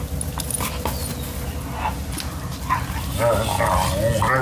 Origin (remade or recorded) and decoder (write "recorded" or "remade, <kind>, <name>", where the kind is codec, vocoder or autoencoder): recorded